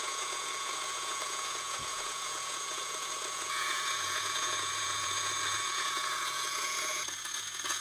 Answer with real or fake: fake